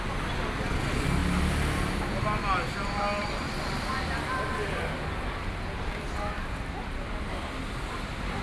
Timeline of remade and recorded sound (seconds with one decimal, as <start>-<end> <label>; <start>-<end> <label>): 0.0-8.4 recorded